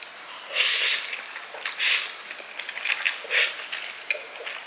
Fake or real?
real